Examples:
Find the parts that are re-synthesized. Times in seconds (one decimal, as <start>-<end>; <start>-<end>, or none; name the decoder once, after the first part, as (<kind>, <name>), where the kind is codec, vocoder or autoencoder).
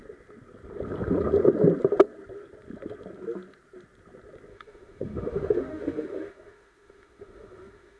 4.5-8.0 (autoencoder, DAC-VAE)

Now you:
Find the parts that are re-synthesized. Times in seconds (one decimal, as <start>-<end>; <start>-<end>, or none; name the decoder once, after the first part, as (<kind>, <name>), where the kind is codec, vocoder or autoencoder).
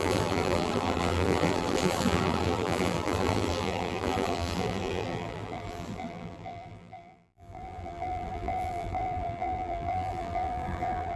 0.0-11.2 (vocoder, BigVGAN v2)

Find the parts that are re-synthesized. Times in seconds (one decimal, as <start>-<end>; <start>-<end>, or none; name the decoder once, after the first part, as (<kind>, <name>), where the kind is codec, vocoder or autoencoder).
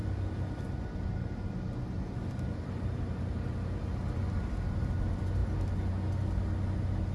0.0-3.0 (vocoder, BigVGAN v2)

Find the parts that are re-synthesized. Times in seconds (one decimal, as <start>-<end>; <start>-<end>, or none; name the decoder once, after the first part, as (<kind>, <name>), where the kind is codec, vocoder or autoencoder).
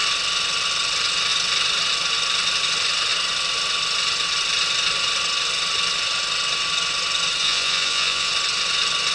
7.4-8.3 (vocoder, Vocos)